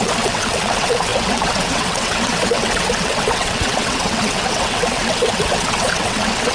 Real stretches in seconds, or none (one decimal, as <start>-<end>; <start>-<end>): none